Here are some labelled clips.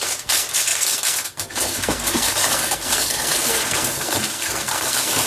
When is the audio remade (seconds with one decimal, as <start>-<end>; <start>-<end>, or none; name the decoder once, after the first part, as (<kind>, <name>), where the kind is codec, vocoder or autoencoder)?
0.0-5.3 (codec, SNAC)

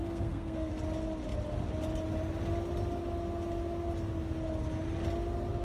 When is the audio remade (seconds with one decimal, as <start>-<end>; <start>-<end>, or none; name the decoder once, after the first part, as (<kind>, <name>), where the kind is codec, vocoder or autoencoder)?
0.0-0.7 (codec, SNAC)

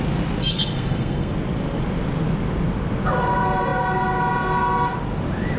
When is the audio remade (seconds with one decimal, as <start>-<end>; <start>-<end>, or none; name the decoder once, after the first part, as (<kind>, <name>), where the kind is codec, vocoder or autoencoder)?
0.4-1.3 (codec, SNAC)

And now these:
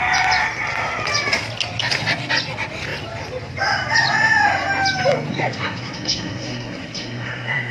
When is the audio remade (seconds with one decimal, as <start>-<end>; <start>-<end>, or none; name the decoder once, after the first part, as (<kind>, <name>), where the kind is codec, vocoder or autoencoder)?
5.3-7.7 (codec, SNAC)

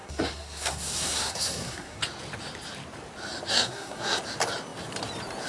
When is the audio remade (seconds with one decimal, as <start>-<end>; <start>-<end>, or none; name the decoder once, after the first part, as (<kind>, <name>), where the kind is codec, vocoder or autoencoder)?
0.0-2.0 (codec, SNAC); 3.5-4.2

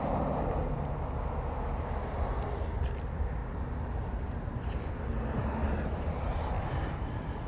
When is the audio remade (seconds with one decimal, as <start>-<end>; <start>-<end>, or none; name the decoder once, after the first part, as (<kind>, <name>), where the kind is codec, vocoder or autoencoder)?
none

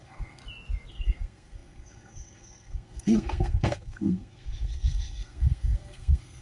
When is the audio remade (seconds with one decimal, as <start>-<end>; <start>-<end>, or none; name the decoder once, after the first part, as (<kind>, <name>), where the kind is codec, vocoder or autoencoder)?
0.0-0.4 (codec, SNAC); 0.9-6.4